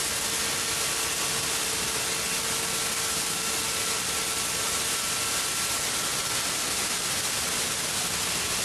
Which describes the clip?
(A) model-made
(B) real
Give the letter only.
B